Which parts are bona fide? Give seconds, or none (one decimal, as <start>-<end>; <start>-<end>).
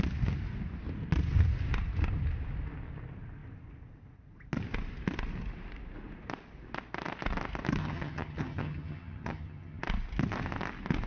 0.0-7.8; 9.8-11.1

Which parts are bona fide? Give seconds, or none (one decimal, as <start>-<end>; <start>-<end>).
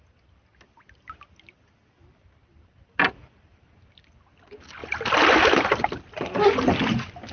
0.0-7.3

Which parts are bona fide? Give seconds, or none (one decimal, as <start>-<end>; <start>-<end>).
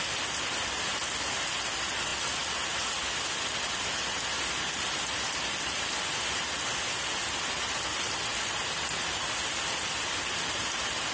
0.0-11.1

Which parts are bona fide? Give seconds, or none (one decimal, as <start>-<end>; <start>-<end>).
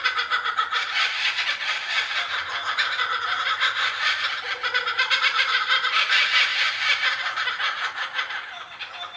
0.0-9.2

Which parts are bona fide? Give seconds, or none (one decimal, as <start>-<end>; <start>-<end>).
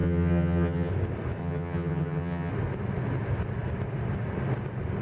0.9-1.4; 2.5-5.0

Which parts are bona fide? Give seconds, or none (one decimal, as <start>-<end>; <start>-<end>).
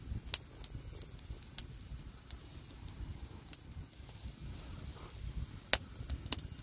0.0-6.6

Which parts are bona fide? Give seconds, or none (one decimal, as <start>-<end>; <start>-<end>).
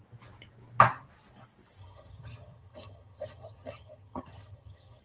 0.0-1.8